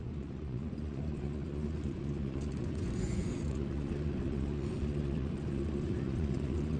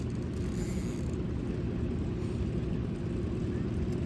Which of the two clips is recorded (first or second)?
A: second